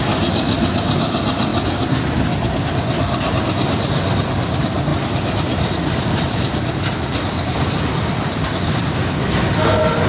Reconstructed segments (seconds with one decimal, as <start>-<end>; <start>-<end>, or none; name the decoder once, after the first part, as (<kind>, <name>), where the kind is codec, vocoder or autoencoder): 4.9-8.8 (vocoder, BigVGAN v2)